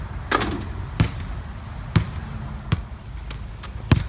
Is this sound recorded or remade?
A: recorded